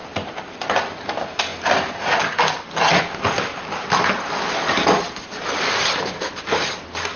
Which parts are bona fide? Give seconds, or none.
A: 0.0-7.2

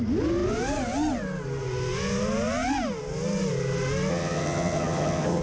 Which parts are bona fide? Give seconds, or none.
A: 0.0-4.1